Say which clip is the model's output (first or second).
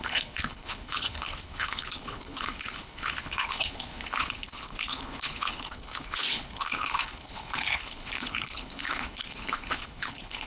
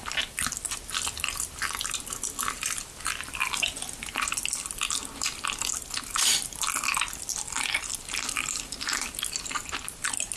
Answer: first